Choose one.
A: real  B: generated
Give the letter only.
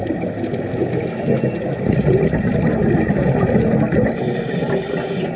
A